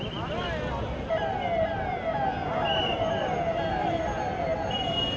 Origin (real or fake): real